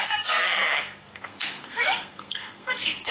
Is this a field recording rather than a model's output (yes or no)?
no